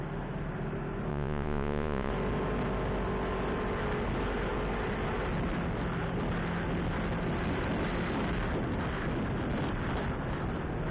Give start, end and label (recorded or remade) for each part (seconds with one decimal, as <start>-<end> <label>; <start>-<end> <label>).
0.0-1.1 recorded; 1.1-2.1 remade; 2.1-10.9 recorded